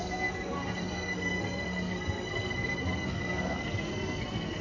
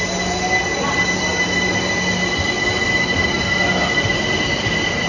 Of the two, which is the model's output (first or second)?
first